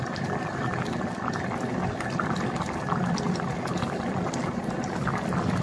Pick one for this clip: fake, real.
real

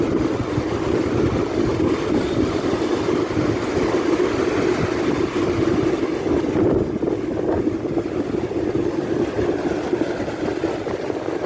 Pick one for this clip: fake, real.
real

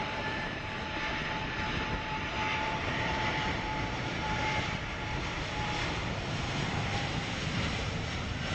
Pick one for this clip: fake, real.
fake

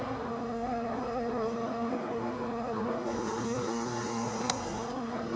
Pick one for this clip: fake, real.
fake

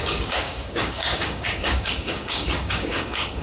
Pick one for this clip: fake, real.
fake